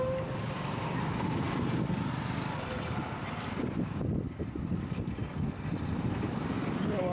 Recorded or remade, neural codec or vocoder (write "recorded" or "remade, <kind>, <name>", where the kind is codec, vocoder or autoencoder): recorded